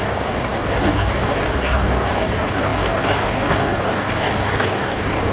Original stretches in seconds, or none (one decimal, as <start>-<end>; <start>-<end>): none